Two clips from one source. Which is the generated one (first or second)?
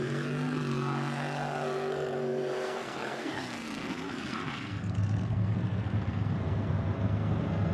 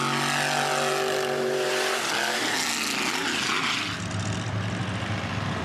first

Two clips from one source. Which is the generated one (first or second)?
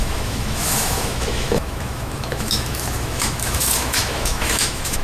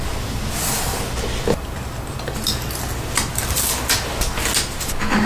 first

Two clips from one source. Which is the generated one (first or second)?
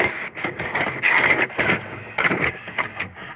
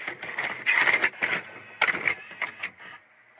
first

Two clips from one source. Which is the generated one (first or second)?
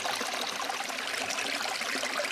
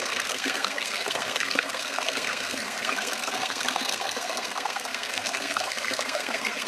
second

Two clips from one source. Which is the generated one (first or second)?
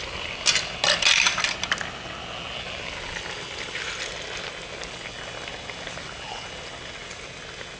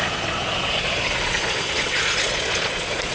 second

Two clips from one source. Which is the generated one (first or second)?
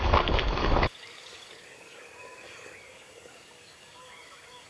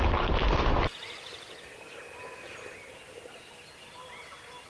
first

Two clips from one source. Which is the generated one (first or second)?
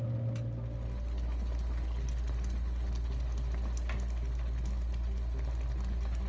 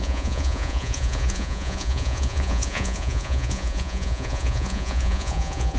second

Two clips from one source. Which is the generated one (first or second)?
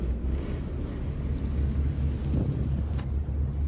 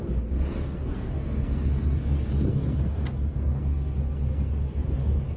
second